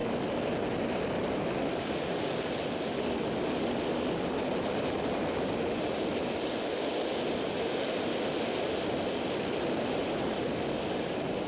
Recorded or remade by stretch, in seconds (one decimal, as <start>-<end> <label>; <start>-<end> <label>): 0.0-11.5 recorded